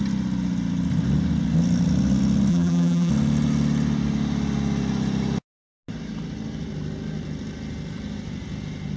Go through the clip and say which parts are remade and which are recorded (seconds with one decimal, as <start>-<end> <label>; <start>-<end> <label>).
0.0-2.5 recorded; 2.5-3.1 remade; 3.1-9.0 recorded